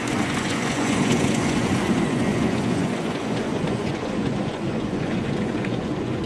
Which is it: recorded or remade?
remade